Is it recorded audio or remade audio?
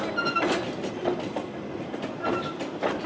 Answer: recorded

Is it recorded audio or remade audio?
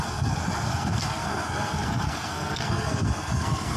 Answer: remade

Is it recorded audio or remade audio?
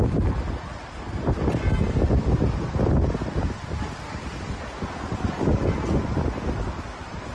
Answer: recorded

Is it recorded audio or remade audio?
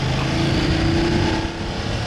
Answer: recorded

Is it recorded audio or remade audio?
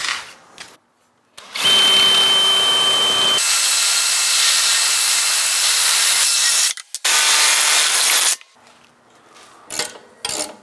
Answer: recorded